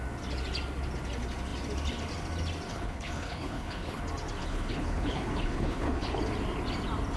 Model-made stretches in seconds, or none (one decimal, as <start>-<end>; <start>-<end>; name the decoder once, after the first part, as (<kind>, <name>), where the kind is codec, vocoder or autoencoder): 2.7-4.0 (codec, HILCodec); 4.4-6.2